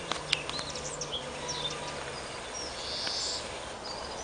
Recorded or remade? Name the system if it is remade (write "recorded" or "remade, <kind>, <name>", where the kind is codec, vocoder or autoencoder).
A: recorded